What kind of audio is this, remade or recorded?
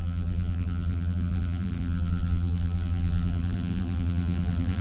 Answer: remade